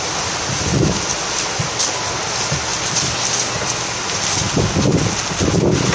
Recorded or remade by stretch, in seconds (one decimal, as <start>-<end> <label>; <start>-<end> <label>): 0.0-5.9 recorded